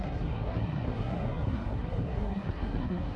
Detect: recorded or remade remade